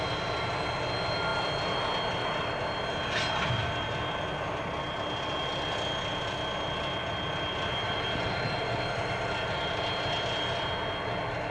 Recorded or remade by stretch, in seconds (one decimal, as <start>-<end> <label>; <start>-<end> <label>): 0.0-11.5 recorded